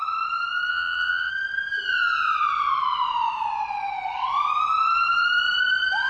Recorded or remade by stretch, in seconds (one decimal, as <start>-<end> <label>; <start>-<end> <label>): 0.0-0.7 recorded; 0.7-1.3 remade; 1.3-6.1 recorded